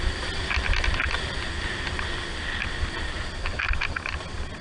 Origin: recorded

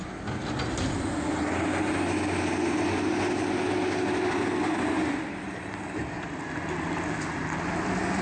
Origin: recorded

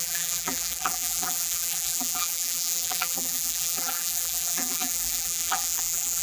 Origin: remade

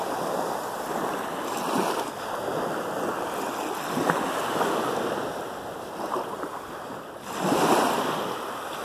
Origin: recorded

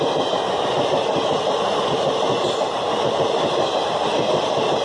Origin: recorded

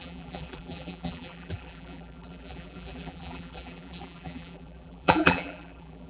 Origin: remade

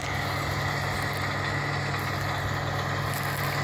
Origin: recorded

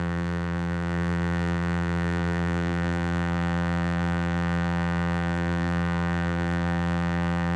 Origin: remade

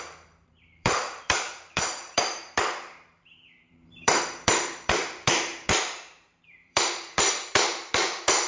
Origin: remade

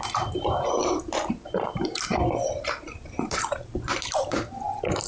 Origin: remade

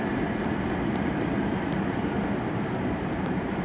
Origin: remade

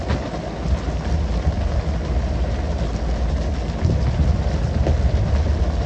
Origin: recorded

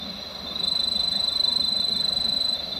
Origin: recorded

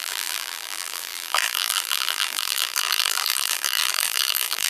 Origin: remade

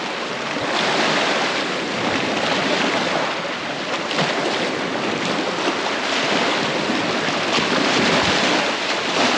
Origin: recorded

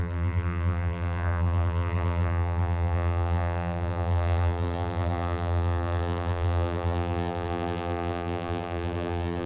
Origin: remade